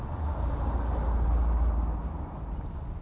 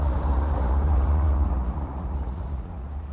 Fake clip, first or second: second